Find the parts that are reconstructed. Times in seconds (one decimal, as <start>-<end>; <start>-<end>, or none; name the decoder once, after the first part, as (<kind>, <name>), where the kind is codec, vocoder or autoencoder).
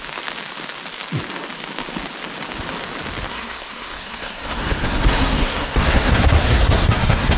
3.3-7.4 (codec, SNAC)